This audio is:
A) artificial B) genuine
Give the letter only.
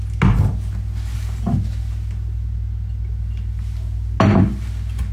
B